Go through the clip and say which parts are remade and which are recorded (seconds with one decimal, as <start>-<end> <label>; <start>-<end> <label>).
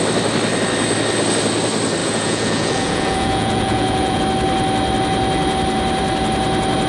0.0-2.0 recorded; 2.0-4.2 remade; 4.2-6.9 recorded